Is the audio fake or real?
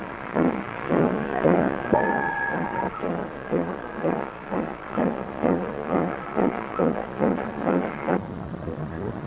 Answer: fake